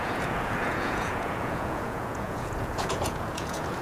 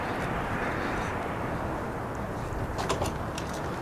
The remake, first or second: first